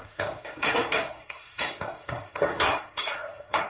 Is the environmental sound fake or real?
fake